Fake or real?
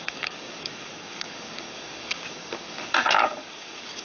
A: fake